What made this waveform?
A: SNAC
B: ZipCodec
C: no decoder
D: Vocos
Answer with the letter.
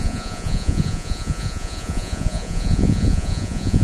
D